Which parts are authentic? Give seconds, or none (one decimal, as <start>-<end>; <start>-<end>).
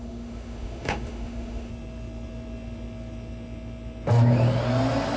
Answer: 1.7-5.2